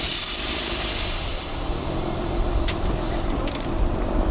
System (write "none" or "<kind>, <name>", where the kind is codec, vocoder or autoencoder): vocoder, BigVGAN v2